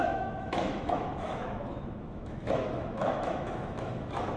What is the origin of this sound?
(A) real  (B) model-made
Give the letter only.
B